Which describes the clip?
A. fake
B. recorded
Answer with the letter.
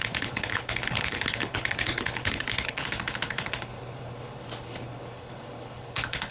A